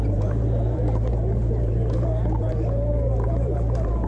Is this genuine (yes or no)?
no